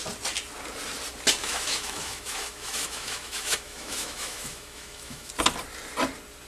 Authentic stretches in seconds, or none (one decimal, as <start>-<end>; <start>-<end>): 0.0-1.4; 5.3-6.5